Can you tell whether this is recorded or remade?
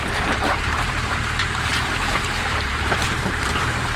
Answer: remade